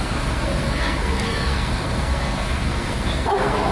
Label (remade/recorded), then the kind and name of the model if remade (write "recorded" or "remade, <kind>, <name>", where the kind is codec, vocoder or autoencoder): remade, codec, SNAC